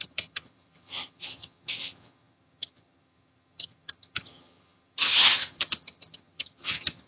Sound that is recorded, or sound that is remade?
remade